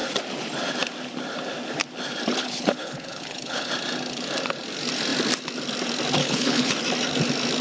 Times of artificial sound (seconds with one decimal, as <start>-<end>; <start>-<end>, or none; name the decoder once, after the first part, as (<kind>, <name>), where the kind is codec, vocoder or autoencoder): 2.4-3.7 (codec, HILCodec); 6.2-6.7